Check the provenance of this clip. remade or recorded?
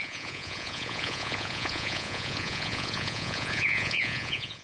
remade